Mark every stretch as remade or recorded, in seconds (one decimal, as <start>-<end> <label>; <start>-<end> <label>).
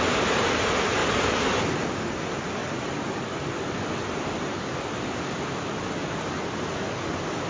0.0-7.5 recorded